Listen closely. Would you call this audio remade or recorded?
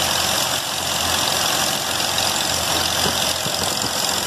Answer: recorded